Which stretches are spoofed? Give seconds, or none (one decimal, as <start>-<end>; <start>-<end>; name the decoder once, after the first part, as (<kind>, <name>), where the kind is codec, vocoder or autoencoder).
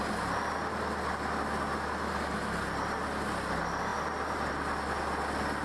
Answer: none